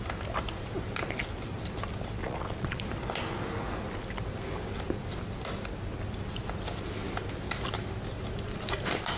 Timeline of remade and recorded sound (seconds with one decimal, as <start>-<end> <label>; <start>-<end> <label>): 0.0-2.2 recorded; 2.2-2.8 remade; 2.8-9.2 recorded